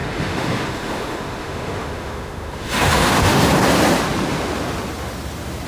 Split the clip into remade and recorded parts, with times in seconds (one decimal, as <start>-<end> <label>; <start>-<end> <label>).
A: 0.0-3.4 remade; 3.4-5.7 recorded